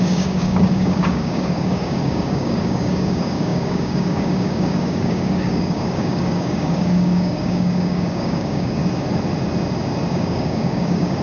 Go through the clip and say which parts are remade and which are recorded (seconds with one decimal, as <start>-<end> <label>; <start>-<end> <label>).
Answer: 0.0-8.8 remade; 8.8-10.1 recorded; 10.1-11.2 remade